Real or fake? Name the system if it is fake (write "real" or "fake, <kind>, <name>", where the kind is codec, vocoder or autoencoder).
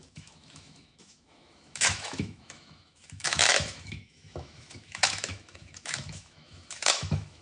fake, autoencoder, DAC-VAE